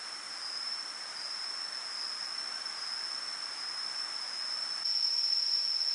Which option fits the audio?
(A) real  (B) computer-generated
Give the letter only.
A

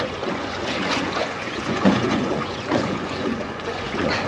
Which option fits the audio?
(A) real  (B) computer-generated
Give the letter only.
B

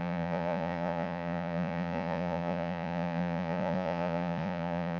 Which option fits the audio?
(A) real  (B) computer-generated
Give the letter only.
B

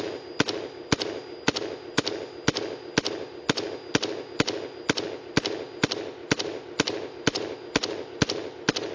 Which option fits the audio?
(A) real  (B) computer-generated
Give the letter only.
A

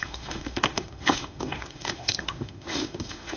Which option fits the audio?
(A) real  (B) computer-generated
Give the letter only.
B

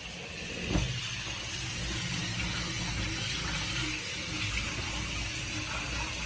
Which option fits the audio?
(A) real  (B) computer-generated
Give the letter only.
A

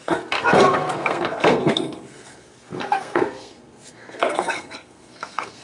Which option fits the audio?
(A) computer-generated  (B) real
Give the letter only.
A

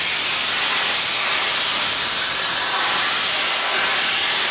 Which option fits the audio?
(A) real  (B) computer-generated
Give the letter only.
A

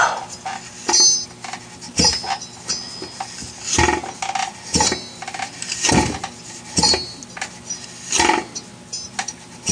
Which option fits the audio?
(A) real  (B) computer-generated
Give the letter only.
A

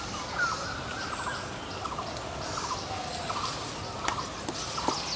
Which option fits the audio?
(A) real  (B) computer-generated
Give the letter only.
A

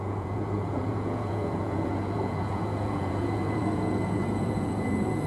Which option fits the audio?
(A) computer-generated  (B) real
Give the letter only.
A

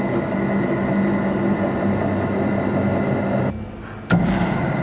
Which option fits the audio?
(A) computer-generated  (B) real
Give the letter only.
B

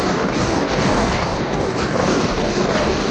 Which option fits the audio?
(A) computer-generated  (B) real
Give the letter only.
A